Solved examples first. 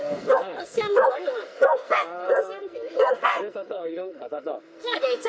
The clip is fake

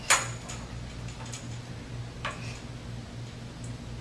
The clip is real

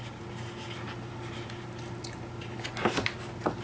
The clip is real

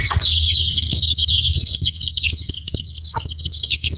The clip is fake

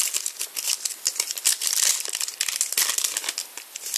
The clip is real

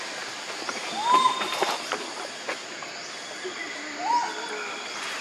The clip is real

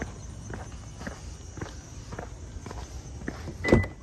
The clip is real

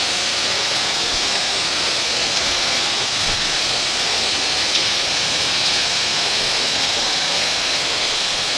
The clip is fake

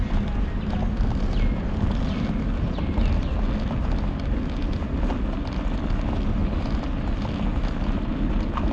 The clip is real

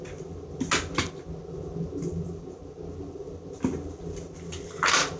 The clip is real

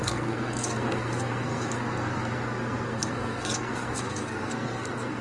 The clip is fake